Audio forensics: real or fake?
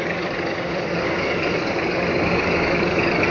fake